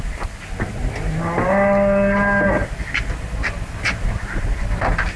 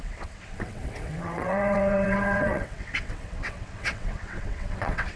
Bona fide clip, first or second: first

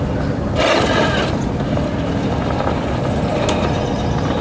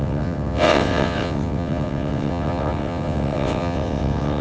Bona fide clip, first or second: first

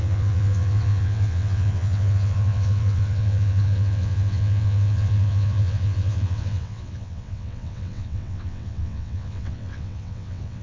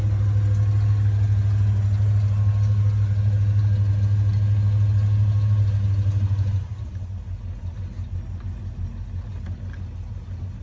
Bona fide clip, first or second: second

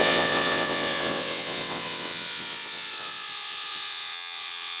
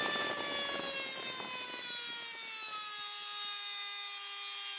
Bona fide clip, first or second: second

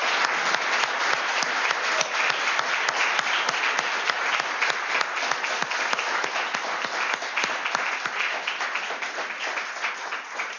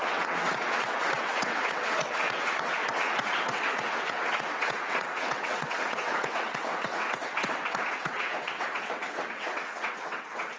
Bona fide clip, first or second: first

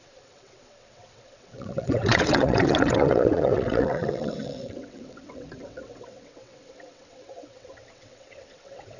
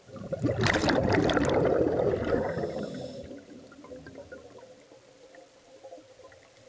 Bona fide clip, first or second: second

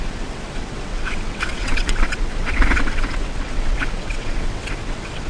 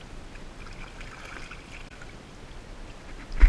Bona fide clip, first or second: second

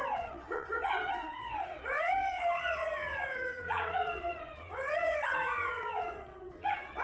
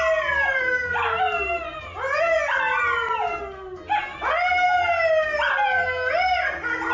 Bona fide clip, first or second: second